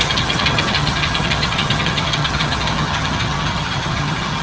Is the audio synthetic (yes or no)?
yes